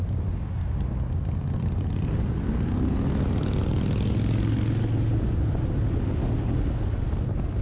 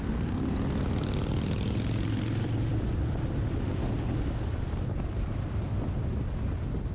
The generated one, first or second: second